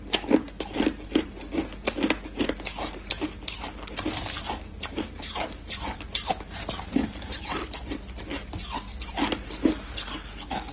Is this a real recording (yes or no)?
yes